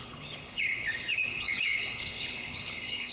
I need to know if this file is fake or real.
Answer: fake